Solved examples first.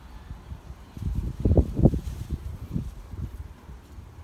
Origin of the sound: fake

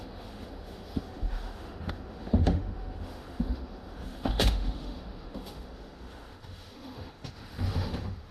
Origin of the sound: fake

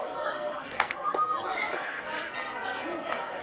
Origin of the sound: fake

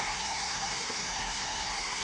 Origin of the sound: fake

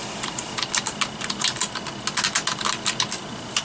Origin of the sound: real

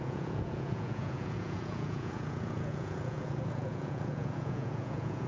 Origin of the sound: fake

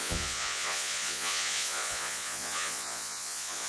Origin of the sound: fake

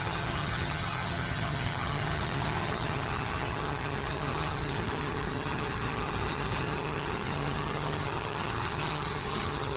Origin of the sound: fake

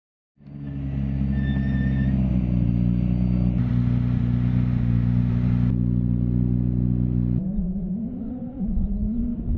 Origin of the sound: real